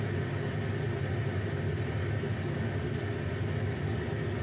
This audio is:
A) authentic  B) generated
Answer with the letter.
A